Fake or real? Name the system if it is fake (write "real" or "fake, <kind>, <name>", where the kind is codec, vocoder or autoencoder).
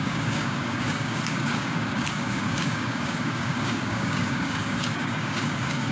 fake, codec, DAC